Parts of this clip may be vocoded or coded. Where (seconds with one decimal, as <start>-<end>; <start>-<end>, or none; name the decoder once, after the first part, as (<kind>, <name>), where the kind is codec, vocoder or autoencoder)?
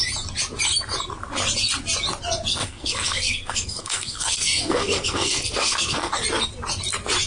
2.5-6.1 (codec, SNAC)